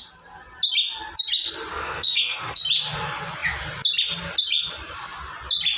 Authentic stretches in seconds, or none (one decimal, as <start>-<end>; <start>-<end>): 0.0-1.7; 2.6-5.8